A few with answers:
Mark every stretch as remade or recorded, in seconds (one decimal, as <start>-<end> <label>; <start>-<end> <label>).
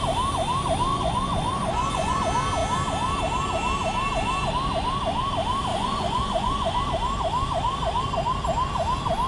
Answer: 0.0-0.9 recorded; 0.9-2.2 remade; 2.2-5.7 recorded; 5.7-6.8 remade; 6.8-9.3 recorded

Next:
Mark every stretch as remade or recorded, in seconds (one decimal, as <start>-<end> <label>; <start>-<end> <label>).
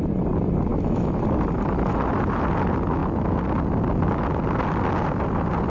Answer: 0.0-0.7 recorded; 0.7-1.2 remade; 1.2-5.7 recorded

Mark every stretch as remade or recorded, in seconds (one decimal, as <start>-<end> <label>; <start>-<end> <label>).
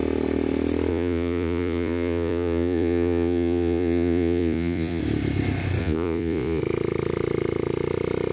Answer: 0.0-0.9 recorded; 0.9-5.0 remade; 5.0-5.8 recorded; 5.8-6.6 remade; 6.6-8.3 recorded